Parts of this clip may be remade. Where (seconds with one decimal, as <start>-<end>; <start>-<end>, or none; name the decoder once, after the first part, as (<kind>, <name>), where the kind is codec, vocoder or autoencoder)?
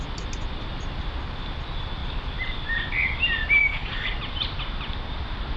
3.6-4.1 (codec, DAC)